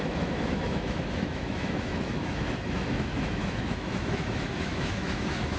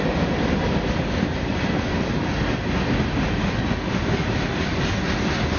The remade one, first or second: first